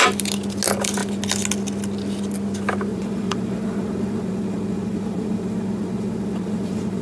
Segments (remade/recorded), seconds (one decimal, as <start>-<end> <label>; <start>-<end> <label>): 0.0-2.9 recorded; 2.9-7.0 remade